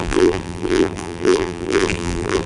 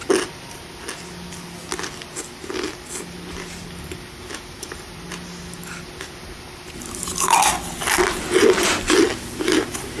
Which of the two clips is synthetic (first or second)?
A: first